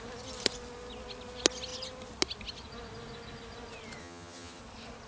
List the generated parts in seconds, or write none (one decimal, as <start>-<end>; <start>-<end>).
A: 4.0-4.6